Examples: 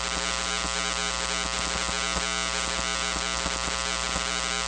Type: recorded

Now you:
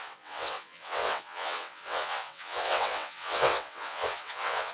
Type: remade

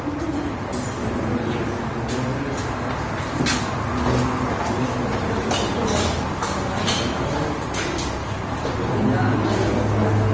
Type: recorded